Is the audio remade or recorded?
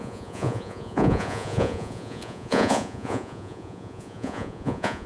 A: remade